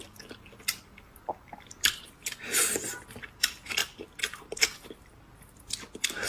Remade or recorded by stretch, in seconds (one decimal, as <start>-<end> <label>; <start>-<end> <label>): 0.0-6.3 recorded